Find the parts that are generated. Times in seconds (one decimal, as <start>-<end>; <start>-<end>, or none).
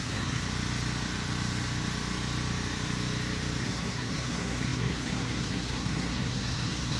0.0-0.4; 3.6-7.0